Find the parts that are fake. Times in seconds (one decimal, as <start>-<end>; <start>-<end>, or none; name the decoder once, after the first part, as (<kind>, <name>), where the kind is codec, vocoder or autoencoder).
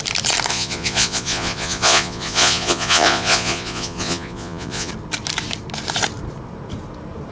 0.5-4.9 (vocoder, Vocos)